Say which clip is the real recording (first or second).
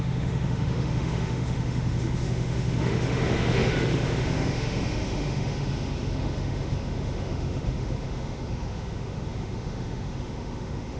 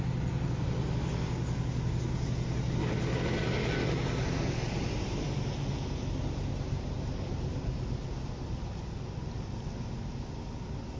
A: second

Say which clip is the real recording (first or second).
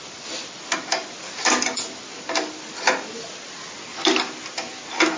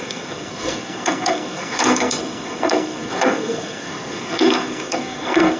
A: first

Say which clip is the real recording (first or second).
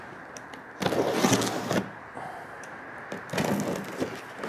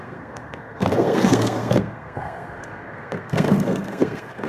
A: first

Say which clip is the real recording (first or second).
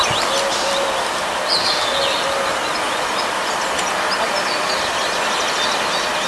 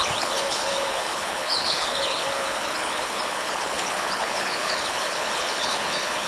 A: first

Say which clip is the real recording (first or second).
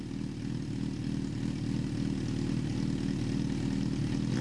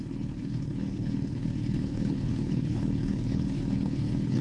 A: first